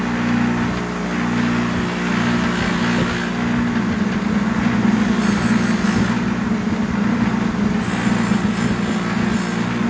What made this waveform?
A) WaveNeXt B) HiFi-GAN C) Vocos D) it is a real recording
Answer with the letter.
D